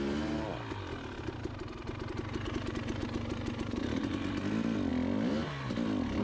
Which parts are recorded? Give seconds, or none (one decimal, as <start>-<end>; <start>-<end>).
0.0-3.0; 4.1-6.2